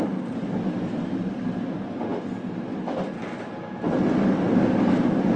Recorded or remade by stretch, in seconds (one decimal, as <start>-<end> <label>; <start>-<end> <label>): 0.0-5.4 recorded